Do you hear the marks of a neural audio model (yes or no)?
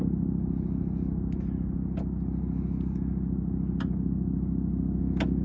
no